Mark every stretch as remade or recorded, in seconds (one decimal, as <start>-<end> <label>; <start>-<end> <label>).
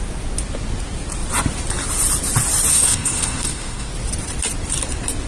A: 0.0-2.7 recorded; 2.7-3.9 remade; 3.9-5.3 recorded